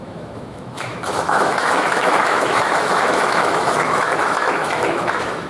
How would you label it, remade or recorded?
remade